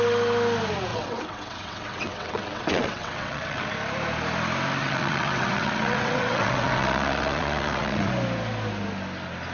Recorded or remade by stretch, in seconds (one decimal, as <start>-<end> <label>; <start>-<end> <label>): 0.0-0.9 recorded; 0.9-3.7 remade; 3.7-4.8 recorded; 4.8-8.1 remade; 8.1-9.5 recorded